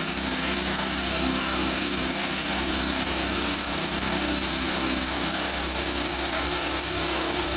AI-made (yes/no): yes